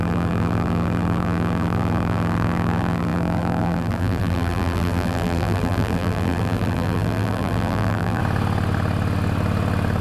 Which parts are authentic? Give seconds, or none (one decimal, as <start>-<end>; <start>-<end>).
8.2-10.0